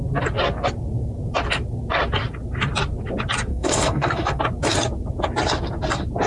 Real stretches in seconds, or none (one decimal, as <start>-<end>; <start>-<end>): 0.0-3.5; 4.4-6.3